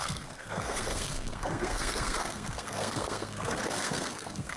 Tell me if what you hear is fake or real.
fake